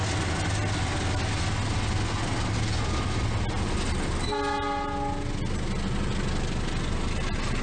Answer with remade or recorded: recorded